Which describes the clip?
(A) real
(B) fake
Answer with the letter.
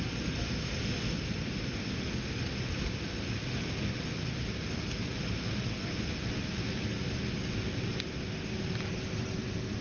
A